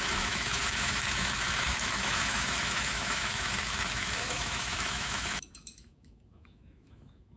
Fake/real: fake